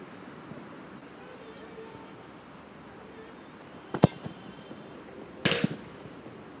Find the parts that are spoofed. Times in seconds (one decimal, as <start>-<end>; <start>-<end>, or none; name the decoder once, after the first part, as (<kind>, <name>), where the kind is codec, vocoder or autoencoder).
none